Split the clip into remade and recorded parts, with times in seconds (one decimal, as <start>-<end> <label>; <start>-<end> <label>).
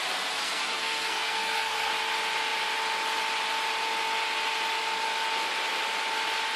0.0-0.4 recorded; 0.4-1.9 remade; 1.9-6.6 recorded